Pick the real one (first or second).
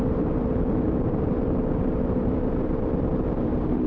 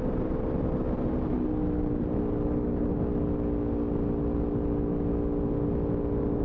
second